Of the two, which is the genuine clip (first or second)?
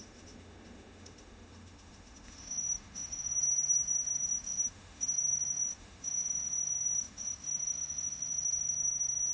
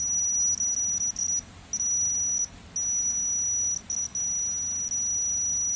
second